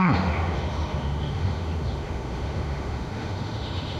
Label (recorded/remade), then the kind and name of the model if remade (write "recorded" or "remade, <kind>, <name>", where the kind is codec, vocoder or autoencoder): remade, autoencoder, DAC-VAE